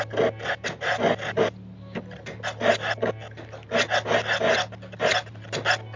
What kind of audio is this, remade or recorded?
recorded